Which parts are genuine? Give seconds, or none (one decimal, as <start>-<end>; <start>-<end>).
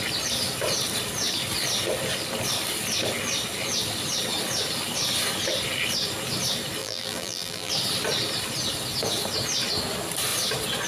0.0-6.8; 7.7-10.9